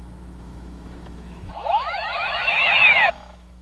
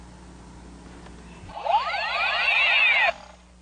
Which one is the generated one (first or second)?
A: first